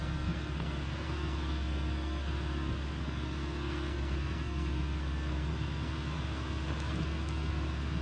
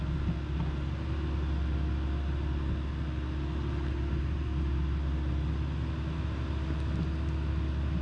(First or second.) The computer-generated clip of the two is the first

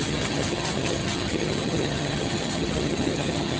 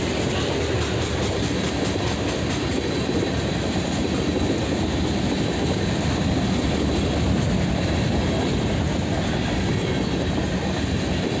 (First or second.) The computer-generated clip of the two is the first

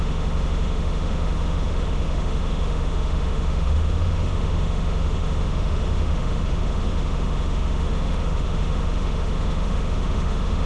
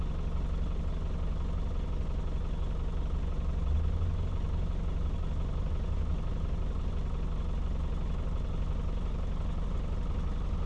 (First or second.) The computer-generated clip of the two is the first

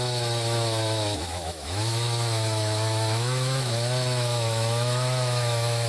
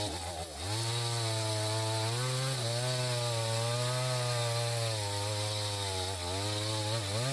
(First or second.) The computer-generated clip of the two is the first